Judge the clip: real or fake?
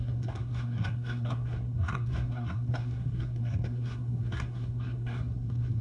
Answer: fake